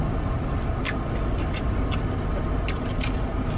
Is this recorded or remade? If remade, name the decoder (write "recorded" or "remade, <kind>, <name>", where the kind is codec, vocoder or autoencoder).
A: recorded